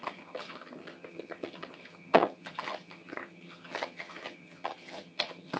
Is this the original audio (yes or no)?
no